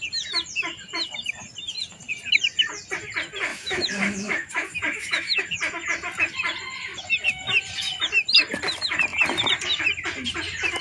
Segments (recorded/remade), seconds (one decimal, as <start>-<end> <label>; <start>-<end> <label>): 0.0-3.5 recorded; 3.5-5.4 remade; 5.4-10.8 recorded